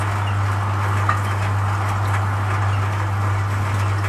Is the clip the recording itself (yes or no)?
yes